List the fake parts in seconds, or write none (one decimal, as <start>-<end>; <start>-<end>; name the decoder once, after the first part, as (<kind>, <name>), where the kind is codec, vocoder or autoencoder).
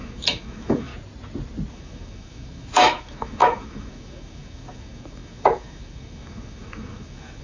0.0-0.9 (autoencoder, DAC-VAE); 1.7-7.4